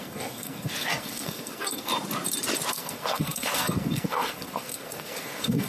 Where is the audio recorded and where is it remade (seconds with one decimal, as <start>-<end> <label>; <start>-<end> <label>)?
0.0-1.9 remade; 1.9-2.7 recorded; 2.7-5.7 remade